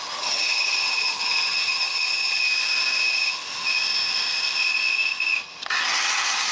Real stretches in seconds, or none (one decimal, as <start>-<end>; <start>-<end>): 2.5-3.0; 3.4-5.4